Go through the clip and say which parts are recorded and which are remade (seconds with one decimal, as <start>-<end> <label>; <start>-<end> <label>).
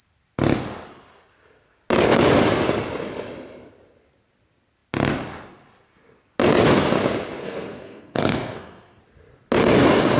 0.0-7.4 recorded; 7.4-9.0 remade; 9.0-10.2 recorded